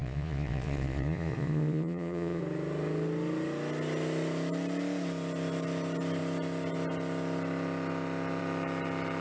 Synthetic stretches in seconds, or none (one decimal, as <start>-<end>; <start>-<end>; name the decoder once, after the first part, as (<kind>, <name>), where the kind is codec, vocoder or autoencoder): 0.0-2.4 (vocoder, Vocos)